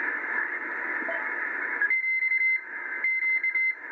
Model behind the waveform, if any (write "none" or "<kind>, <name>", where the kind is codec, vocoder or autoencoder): none